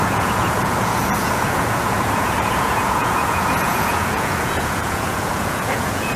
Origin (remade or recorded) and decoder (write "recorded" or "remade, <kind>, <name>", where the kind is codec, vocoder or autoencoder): remade, vocoder, Vocos